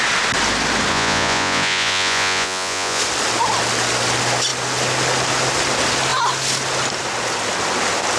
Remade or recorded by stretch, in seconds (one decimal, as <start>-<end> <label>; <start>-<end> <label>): 0.0-0.9 recorded; 0.9-3.0 remade; 3.0-8.2 recorded